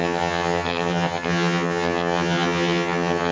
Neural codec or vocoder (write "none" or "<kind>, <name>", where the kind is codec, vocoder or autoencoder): vocoder, HiFi-GAN